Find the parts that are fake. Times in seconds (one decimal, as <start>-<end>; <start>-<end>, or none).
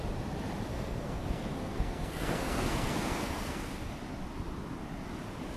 0.7-3.9